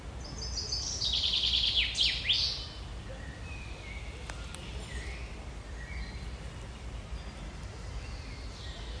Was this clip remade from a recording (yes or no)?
no